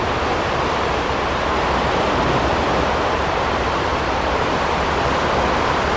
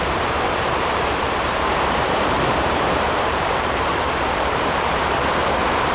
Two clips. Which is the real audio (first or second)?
first